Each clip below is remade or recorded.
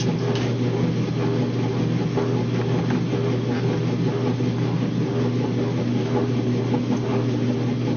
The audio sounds recorded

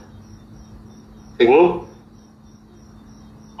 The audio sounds recorded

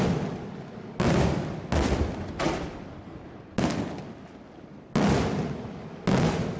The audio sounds recorded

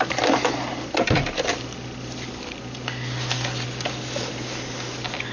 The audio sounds recorded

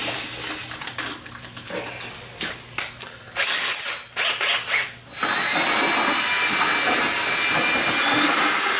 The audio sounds recorded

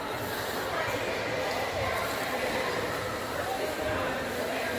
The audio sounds remade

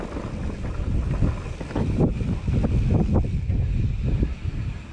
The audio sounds recorded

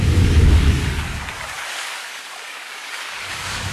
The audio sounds remade